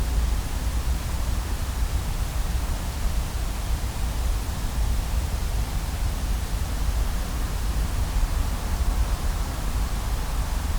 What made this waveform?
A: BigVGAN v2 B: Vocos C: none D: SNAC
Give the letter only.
C